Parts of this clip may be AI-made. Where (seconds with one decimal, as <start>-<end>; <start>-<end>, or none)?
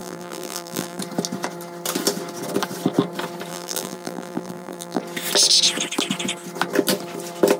0.0-1.0; 3.5-5.0